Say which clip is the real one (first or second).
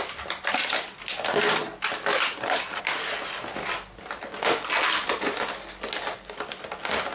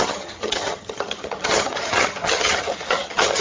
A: first